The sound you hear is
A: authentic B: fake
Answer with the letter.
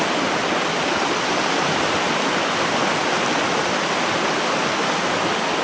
A